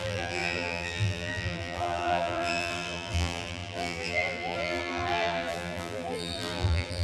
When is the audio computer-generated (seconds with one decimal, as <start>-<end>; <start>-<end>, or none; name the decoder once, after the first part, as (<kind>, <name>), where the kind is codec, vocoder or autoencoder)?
0.0-7.0 (vocoder, BigVGAN v2)